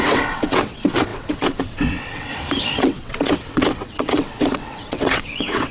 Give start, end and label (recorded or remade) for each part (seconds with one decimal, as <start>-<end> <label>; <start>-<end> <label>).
0.0-2.3 remade; 2.3-2.8 recorded; 2.8-5.7 remade